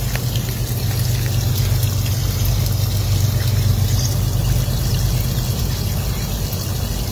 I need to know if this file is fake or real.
real